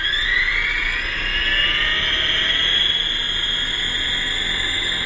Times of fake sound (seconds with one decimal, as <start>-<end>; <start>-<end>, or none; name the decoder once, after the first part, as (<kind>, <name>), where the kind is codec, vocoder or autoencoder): none